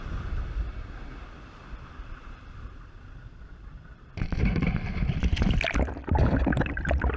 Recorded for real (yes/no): no